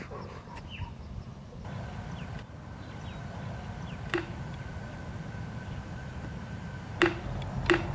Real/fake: real